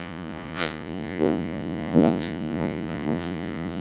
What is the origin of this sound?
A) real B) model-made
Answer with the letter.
B